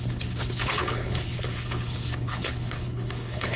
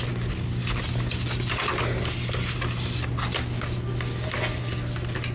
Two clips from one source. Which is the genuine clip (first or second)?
second